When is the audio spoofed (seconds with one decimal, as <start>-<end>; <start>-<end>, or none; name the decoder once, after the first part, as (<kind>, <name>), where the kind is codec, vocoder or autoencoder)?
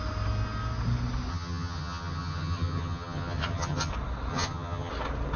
1.3-3.9 (vocoder, HiFi-GAN); 4.3-4.9